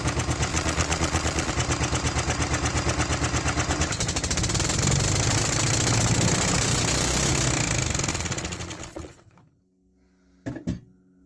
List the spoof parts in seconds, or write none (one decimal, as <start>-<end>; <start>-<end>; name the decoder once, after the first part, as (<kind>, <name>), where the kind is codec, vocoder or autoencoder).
0.5-1.5 (vocoder, Vocos); 8.1-9.6